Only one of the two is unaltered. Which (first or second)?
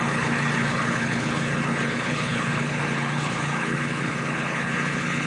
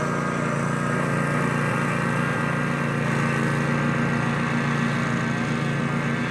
second